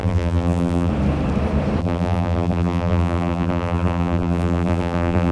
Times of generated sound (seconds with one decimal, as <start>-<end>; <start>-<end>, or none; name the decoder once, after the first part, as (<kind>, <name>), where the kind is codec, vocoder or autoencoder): 0.0-0.9 (vocoder, BigVGAN v2); 1.8-5.3